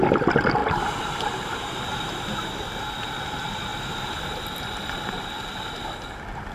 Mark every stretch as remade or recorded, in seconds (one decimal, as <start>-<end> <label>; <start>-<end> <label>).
0.0-0.6 recorded; 0.6-1.8 remade; 1.8-6.5 recorded